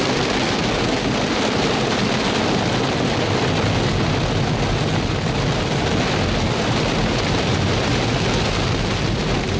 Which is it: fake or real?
real